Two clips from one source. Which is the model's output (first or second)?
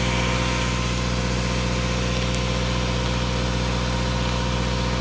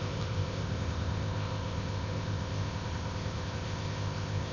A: second